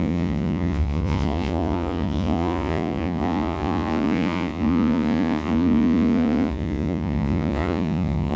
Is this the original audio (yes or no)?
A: no